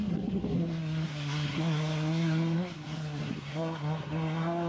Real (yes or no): no